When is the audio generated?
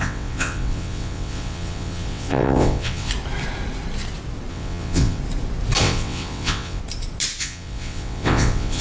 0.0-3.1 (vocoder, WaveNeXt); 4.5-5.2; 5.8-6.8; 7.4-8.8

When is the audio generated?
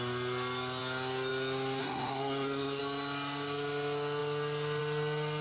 1.8-2.8 (codec, SNAC)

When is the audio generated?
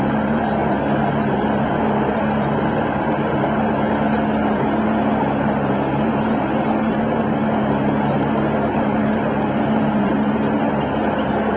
none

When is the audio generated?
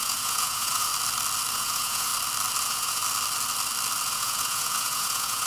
0.0-0.9 (vocoder, Vocos); 1.5-2.1; 2.6-3.0; 4.1-5.5